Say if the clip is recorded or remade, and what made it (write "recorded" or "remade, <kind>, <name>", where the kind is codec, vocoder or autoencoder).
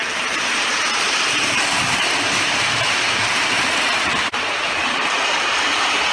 remade, vocoder, BigVGAN v2